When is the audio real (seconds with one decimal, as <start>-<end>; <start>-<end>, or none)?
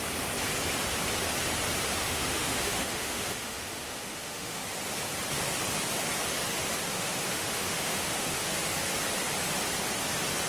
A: 0.0-2.0; 4.6-6.9; 8.7-10.5